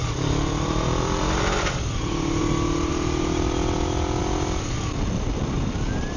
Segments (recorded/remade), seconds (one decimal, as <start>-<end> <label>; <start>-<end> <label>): 0.0-2.4 remade; 2.4-6.2 recorded